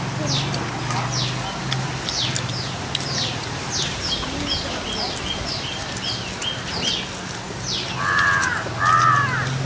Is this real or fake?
real